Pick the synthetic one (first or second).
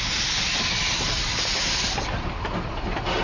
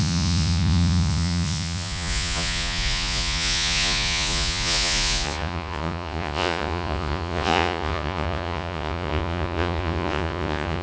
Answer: second